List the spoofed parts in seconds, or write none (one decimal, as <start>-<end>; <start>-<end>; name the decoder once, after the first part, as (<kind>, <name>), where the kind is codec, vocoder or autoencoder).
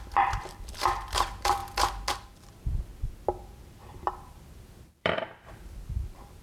0.0-1.6 (vocoder, BigVGAN v2); 2.1-2.9; 3.7-6.4